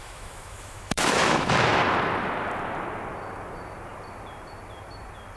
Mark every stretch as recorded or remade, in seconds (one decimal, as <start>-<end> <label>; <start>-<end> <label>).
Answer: 0.0-1.8 remade; 1.8-5.4 recorded